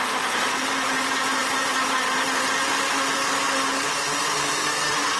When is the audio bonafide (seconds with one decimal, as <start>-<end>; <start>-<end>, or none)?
0.0-5.2